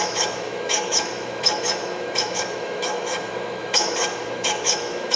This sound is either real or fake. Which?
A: fake